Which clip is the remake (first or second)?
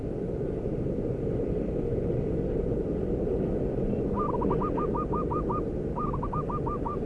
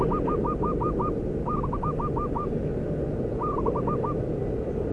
first